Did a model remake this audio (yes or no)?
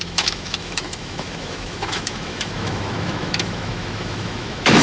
yes